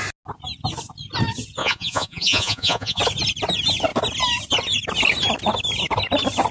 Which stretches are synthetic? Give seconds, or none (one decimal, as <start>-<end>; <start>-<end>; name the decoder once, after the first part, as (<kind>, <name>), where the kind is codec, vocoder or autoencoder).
1.6-3.0 (vocoder, Vocos)